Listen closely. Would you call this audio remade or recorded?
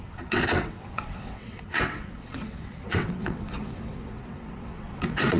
remade